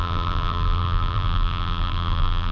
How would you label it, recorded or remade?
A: remade